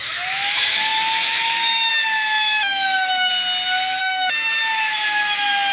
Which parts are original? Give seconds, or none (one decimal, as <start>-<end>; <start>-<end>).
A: 3.3-4.0